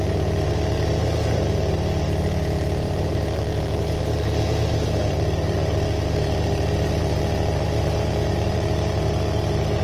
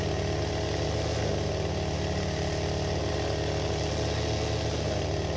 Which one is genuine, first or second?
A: second